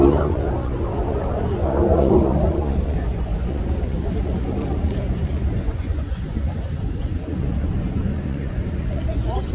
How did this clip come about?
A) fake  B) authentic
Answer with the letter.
A